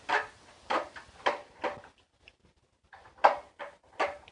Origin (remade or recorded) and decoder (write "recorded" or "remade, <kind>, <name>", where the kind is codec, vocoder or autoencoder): recorded